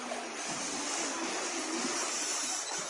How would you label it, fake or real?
real